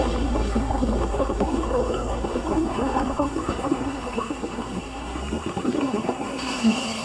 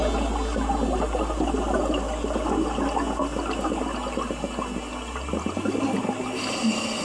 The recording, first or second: second